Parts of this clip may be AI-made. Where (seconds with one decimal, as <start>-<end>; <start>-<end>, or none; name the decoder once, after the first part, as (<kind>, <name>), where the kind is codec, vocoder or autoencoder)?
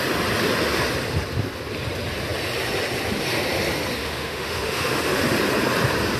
4.0-5.2 (autoencoder, DAC-VAE)